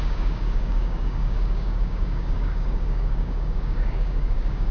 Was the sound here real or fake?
fake